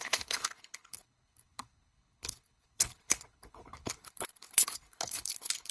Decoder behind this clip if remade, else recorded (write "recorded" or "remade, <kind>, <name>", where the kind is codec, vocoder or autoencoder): remade, codec, HILCodec